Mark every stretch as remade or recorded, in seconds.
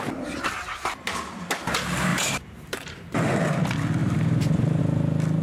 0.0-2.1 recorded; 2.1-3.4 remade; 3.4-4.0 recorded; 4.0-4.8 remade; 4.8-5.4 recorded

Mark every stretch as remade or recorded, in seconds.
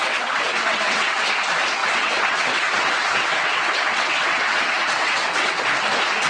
0.0-1.3 remade; 1.3-1.8 recorded; 1.8-5.6 remade; 5.6-6.3 recorded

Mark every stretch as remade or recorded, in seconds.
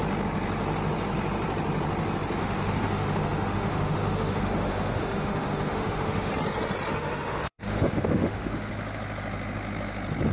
0.0-2.4 recorded; 2.4-6.3 remade; 6.3-6.9 recorded; 6.9-8.7 remade; 8.7-10.3 recorded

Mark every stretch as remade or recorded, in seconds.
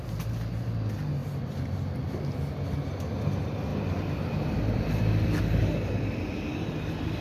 0.0-1.2 recorded; 1.2-2.1 remade; 2.1-3.7 recorded; 3.7-5.4 remade; 5.4-7.2 recorded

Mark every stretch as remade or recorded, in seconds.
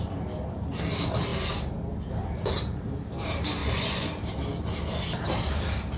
0.0-3.6 recorded; 3.6-4.1 remade; 4.1-6.0 recorded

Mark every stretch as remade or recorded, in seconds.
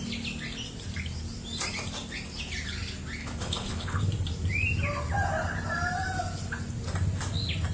0.0-3.2 recorded; 3.2-4.0 remade; 4.0-7.7 recorded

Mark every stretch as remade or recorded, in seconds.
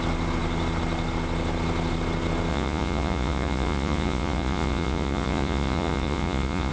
0.0-2.5 recorded; 2.5-6.7 remade